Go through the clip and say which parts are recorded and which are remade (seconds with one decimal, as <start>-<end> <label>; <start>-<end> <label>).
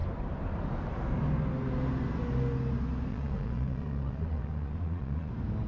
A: 0.0-3.1 recorded; 3.1-5.3 remade; 5.3-5.7 recorded